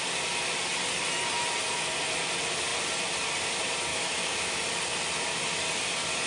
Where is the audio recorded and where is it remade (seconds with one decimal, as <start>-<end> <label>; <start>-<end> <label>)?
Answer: 0.0-3.9 recorded; 3.9-4.6 remade; 4.6-6.3 recorded

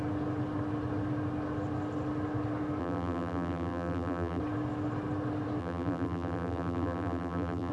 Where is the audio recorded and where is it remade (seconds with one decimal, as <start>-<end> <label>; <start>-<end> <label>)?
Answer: 0.0-2.8 recorded; 2.8-4.4 remade; 4.4-5.6 recorded; 5.6-7.7 remade

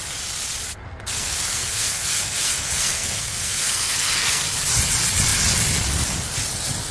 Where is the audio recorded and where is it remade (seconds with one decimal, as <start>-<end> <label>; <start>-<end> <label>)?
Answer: 0.0-0.8 recorded; 0.8-4.5 remade; 4.5-6.9 recorded

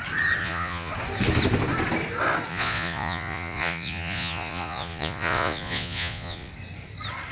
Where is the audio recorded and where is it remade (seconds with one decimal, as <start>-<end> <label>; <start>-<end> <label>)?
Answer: 0.0-0.4 recorded; 0.4-0.9 remade; 0.9-2.5 recorded; 2.5-6.5 remade; 6.5-7.3 recorded

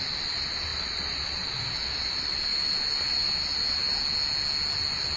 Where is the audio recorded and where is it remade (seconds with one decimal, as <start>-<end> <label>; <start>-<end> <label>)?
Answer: 0.0-5.2 recorded

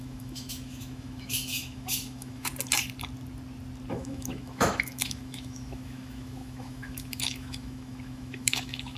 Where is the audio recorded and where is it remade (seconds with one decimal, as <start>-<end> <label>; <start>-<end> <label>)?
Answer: 0.0-2.5 remade; 2.5-3.9 recorded; 3.9-9.0 remade